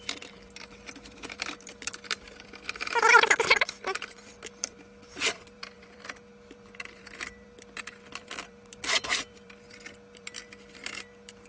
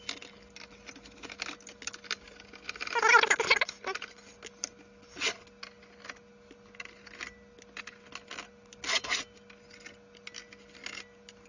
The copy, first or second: first